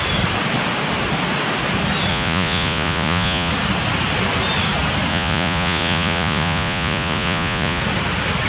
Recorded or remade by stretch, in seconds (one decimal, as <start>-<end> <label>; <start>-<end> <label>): 0.0-2.1 recorded; 2.1-3.5 remade; 3.5-5.1 recorded; 5.1-7.8 remade; 7.8-8.5 recorded